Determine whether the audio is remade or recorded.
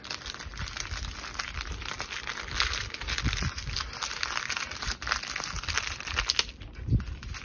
recorded